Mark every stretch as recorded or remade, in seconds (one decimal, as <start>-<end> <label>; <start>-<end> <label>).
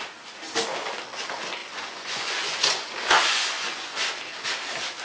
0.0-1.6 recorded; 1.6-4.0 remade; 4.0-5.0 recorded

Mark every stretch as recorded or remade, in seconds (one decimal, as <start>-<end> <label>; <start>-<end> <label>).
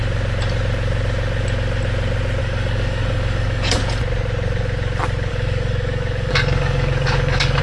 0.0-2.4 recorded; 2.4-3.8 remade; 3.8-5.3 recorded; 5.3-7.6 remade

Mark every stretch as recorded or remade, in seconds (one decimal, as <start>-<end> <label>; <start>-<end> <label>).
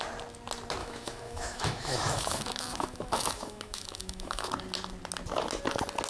0.0-0.8 recorded; 0.8-4.5 remade; 4.5-6.1 recorded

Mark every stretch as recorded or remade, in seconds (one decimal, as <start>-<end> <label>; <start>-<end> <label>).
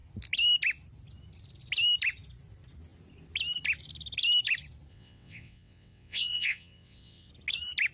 0.0-4.9 recorded; 4.9-7.3 remade; 7.3-7.9 recorded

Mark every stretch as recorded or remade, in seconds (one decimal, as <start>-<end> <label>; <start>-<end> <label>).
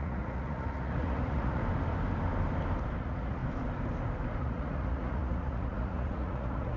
0.0-1.6 remade; 1.6-3.0 recorded; 3.0-3.4 remade; 3.4-4.4 recorded; 4.4-6.8 remade